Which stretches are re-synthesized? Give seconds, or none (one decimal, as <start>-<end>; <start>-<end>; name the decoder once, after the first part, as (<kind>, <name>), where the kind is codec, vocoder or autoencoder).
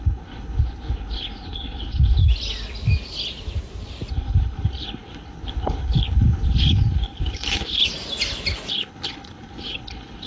0.0-2.2 (codec, HILCodec); 4.1-7.8; 8.7-10.3